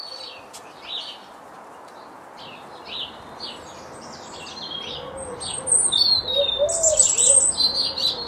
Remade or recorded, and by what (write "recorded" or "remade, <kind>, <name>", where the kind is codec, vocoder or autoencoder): recorded